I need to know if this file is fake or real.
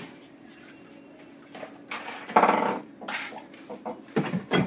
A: fake